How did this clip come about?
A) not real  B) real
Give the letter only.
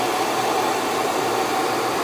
A